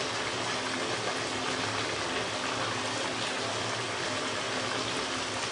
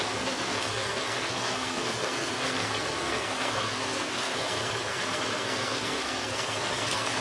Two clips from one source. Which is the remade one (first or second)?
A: second